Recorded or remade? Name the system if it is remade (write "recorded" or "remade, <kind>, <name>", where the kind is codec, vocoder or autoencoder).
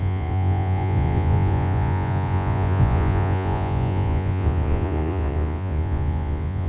remade, vocoder, Vocos